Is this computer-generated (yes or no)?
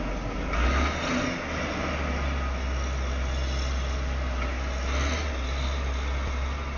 no